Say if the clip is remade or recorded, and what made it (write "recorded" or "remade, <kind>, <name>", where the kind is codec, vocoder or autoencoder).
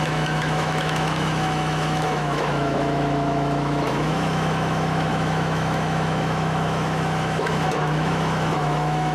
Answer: remade, autoencoder, DAC-VAE